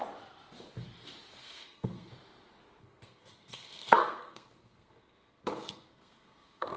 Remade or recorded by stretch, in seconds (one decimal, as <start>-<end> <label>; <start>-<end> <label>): 0.0-1.4 recorded; 1.4-2.1 remade; 2.1-2.8 recorded; 2.8-6.8 remade